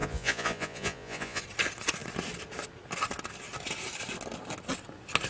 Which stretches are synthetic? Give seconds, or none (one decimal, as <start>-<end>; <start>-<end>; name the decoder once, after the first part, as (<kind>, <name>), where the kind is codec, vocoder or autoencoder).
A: 0.0-1.4 (vocoder, Vocos)